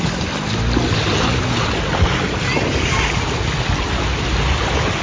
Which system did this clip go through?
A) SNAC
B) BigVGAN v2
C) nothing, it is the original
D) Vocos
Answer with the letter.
C